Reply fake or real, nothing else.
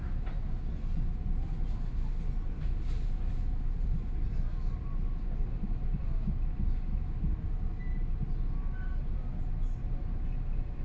real